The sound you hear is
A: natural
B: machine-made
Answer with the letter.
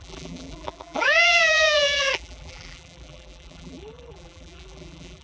B